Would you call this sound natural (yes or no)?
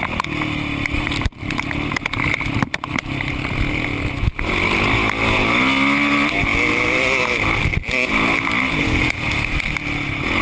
yes